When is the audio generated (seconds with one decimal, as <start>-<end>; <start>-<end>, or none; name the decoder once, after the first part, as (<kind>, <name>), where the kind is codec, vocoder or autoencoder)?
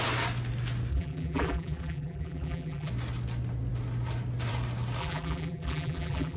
0.9-2.9 (vocoder, BigVGAN v2); 5.0-6.4